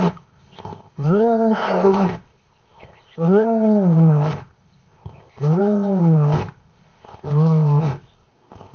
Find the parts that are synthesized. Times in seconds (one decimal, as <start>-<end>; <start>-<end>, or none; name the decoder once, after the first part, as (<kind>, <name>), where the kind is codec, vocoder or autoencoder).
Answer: 0.0-8.7 (codec, ZipCodec)